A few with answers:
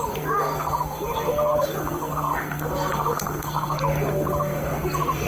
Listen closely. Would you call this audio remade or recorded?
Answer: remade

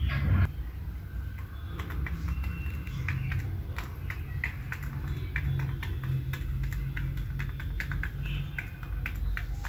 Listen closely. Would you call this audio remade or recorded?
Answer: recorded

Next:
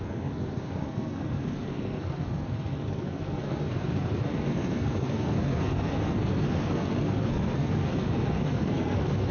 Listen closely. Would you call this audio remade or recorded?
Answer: remade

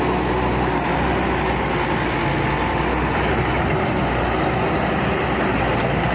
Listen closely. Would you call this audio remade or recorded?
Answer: recorded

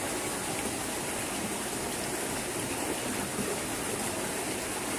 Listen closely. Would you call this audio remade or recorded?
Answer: recorded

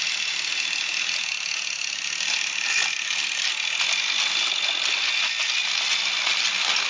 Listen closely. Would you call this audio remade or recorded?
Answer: recorded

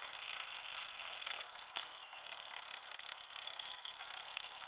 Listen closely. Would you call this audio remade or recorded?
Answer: remade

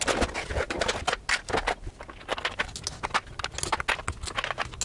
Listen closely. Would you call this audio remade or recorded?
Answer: recorded